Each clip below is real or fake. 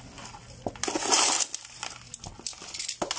real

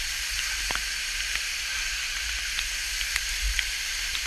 real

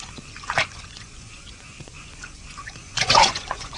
fake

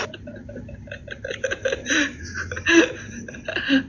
real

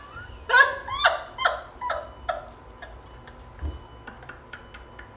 real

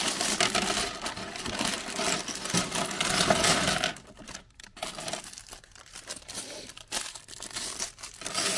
real